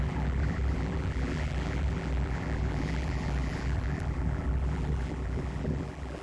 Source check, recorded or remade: remade